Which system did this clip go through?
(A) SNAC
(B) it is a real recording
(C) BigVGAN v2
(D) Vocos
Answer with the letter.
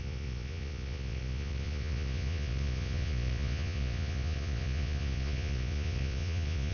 D